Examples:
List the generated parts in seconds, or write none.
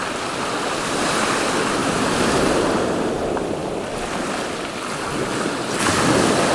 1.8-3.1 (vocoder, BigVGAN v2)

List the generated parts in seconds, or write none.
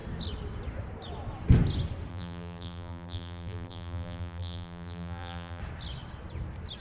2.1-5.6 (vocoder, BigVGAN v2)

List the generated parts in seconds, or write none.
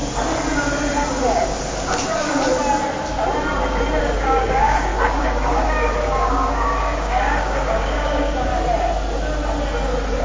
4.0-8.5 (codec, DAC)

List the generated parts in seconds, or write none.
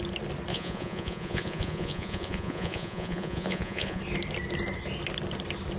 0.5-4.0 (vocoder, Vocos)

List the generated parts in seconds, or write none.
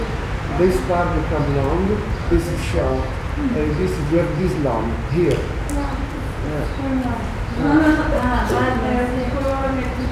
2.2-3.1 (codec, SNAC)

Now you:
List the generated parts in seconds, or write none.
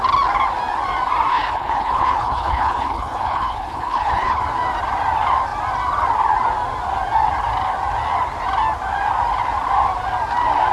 1.3-4.4 (codec, HILCodec)